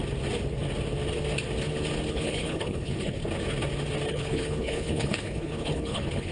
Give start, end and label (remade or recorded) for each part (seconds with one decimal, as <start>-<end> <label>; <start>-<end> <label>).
0.0-2.1 recorded; 2.1-3.2 remade; 3.2-4.1 recorded; 4.1-6.3 remade